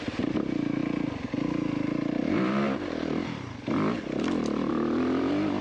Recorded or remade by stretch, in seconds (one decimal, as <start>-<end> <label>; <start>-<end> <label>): 0.0-0.8 remade; 0.8-2.2 recorded; 2.2-3.2 remade; 3.2-4.7 recorded; 4.7-5.6 remade